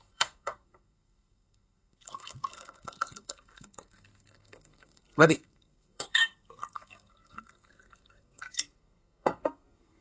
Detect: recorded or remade remade